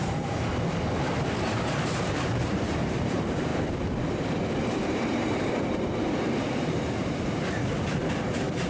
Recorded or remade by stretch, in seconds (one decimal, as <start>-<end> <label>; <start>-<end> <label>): 0.0-1.5 recorded; 1.5-3.5 remade; 3.5-4.8 recorded; 4.8-8.7 remade